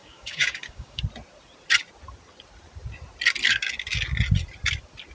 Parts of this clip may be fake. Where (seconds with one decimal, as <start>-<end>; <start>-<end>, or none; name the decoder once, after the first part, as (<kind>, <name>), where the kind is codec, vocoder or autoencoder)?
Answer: 0.0-1.0 (codec, DAC)